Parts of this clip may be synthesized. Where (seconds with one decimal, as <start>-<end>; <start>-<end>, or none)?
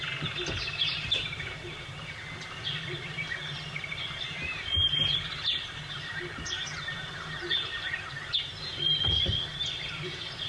0.0-8.7; 9.5-10.5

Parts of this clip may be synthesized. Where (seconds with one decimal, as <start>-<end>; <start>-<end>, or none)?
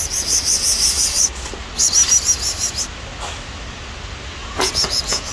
4.4-5.3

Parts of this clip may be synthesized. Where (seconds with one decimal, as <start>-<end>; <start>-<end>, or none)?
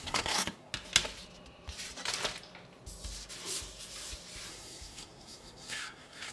0.0-0.7; 4.5-6.3